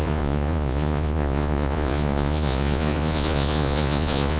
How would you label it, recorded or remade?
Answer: remade